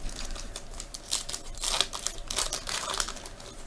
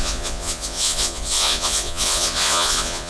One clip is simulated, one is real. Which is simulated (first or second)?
second